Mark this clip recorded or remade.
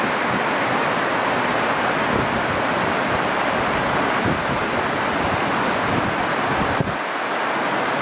recorded